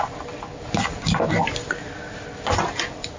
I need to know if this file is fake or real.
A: real